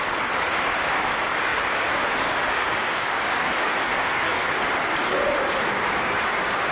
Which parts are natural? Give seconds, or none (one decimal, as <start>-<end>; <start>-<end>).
0.0-1.0; 4.4-5.7